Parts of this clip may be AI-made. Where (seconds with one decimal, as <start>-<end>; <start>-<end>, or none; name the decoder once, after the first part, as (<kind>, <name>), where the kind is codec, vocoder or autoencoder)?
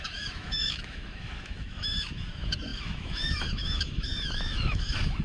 0.0-5.2 (autoencoder, DAC-VAE)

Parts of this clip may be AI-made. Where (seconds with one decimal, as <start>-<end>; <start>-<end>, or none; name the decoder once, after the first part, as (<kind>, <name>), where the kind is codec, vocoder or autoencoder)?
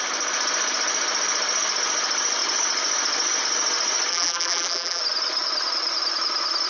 4.1-5.0 (vocoder, BigVGAN v2)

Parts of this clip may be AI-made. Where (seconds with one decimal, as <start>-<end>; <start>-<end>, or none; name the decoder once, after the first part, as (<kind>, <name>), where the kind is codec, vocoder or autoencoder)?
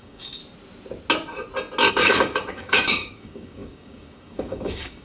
0.0-0.4 (codec, DAC); 1.9-5.0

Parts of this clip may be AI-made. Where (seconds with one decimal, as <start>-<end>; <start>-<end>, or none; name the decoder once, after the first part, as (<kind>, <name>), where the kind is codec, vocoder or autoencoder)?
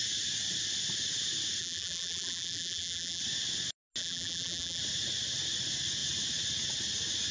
1.6-3.2 (vocoder, BigVGAN v2); 4.0-4.8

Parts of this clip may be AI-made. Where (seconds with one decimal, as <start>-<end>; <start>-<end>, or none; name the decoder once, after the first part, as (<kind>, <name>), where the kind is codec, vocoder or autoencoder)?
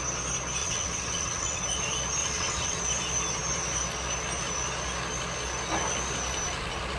0.6-1.6 (vocoder, WaveNeXt); 2.2-2.8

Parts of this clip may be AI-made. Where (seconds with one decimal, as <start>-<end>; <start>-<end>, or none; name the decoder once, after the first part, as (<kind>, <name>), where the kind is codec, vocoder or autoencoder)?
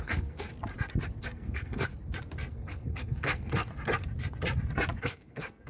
0.0-0.5 (codec, SNAC); 1.2-1.9; 2.5-3.7; 5.0-5.7